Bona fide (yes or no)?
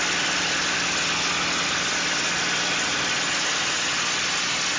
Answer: yes